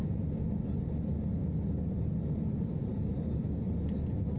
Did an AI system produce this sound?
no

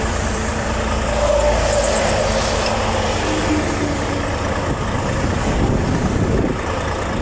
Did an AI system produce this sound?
no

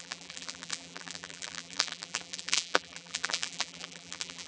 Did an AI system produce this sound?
yes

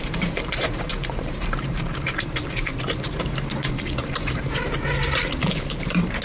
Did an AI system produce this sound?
yes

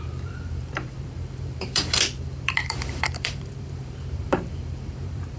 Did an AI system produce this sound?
yes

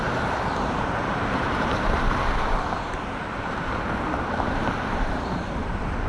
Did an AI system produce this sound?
yes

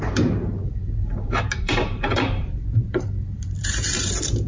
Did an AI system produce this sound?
yes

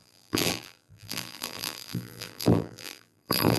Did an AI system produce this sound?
yes